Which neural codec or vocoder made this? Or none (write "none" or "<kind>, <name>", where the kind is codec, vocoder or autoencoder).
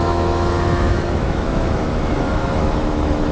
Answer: autoencoder, DAC-VAE